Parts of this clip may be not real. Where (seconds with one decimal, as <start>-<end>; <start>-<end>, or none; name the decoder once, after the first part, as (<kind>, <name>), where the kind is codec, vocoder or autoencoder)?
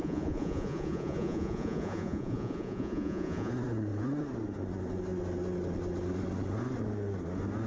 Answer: 0.0-3.5 (vocoder, Vocos)